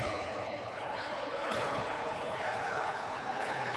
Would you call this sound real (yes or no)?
no